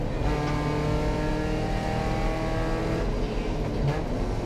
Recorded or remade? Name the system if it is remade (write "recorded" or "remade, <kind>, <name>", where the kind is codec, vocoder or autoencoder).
recorded